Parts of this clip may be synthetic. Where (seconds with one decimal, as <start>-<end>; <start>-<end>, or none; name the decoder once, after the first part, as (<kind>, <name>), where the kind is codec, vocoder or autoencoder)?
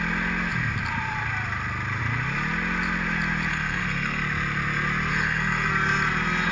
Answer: 3.5-4.2 (codec, SNAC); 5.1-5.7